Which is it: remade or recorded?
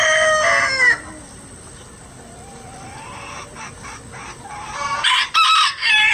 recorded